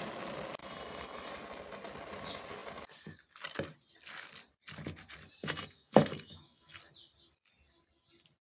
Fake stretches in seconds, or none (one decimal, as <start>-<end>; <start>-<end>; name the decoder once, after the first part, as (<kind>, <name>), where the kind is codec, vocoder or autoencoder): 0.6-1.3 (autoencoder, DAC-VAE); 5.4-6.8